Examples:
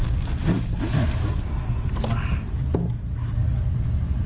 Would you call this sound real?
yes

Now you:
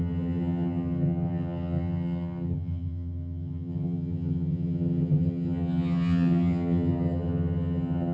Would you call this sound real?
no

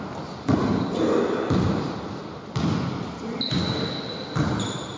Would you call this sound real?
yes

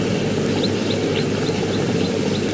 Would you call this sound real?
yes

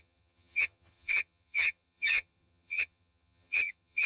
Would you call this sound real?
no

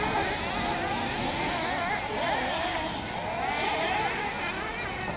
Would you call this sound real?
yes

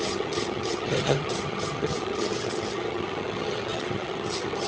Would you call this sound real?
no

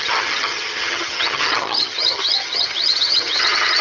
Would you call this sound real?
no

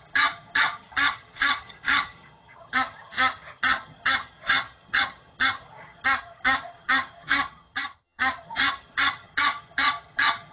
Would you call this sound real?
no